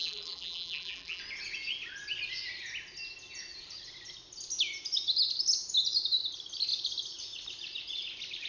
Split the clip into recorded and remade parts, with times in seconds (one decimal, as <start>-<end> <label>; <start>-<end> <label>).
0.0-1.2 remade; 1.2-8.5 recorded